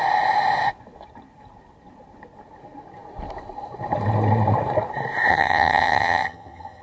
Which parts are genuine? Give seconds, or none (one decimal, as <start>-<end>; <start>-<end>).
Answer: 0.0-5.3

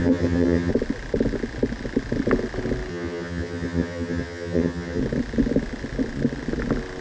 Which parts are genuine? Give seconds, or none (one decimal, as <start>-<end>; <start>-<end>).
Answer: 0.7-2.9; 5.0-7.0